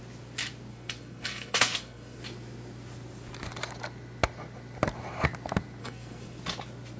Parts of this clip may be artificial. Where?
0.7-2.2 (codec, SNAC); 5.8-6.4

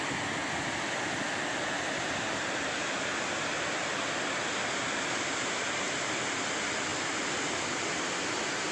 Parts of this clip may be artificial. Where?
none

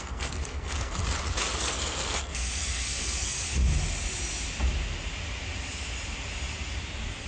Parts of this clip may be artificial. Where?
0.0-1.0 (codec, SNAC); 1.6-3.6